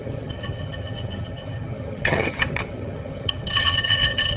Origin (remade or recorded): remade